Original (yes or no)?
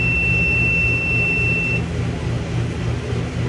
yes